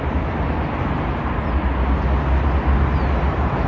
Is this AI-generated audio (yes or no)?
no